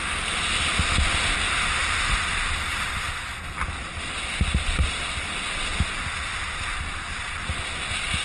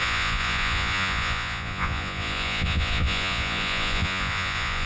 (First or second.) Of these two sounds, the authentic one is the first